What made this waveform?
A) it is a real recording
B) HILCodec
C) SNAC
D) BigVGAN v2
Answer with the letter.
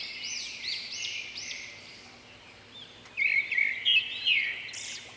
D